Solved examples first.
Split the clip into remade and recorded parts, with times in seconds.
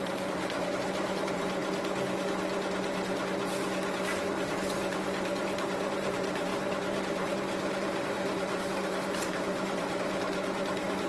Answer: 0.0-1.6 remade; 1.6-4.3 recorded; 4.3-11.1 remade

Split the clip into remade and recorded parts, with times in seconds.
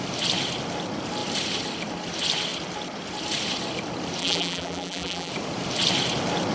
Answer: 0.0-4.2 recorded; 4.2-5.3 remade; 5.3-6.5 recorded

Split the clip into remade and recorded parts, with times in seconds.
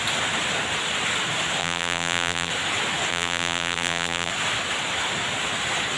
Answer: 0.0-1.6 recorded; 1.6-2.5 remade; 2.5-3.1 recorded; 3.1-4.3 remade; 4.3-6.0 recorded